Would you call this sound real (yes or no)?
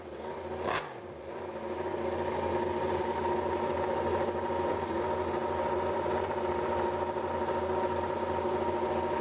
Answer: yes